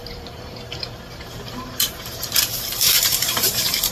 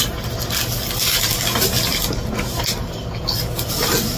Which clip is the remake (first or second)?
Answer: first